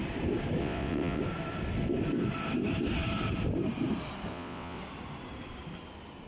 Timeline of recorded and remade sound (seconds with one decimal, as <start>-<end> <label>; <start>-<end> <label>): 0.0-0.6 recorded; 0.6-1.2 remade; 1.2-4.3 recorded; 4.3-4.8 remade; 4.8-6.3 recorded